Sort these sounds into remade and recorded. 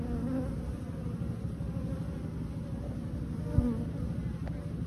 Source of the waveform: recorded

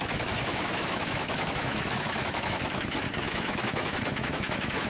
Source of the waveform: remade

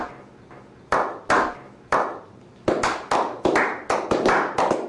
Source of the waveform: recorded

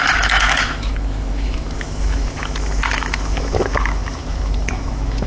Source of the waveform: remade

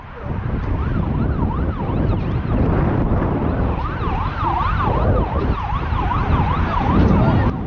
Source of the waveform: recorded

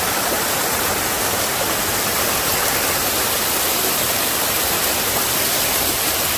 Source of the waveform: recorded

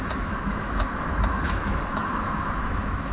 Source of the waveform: remade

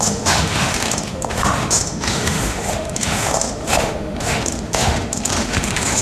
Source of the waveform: remade